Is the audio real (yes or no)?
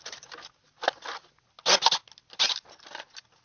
yes